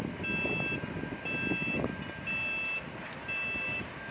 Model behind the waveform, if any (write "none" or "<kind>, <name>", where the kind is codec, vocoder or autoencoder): none